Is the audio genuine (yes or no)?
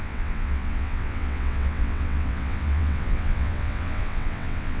no